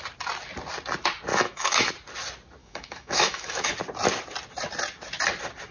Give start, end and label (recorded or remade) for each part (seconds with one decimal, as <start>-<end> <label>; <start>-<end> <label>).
0.0-1.3 recorded; 1.3-1.9 remade; 1.9-2.6 recorded; 2.6-3.7 remade; 3.7-5.7 recorded